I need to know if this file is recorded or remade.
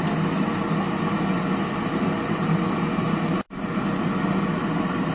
recorded